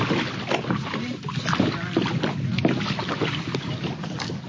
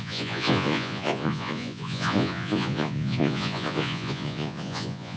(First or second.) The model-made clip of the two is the second